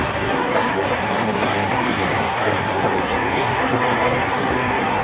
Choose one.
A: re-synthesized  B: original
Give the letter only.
A